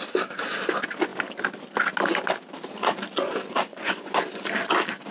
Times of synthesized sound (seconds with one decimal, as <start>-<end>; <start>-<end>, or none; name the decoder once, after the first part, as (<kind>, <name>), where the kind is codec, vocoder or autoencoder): 3.7-4.4 (vocoder, Vocos)